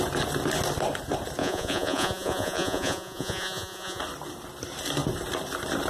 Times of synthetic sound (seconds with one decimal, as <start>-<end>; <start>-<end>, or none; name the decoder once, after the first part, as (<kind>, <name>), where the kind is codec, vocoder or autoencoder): 1.4-4.0 (vocoder, Vocos)